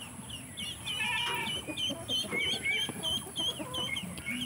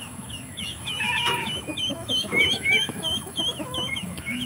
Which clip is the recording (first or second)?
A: first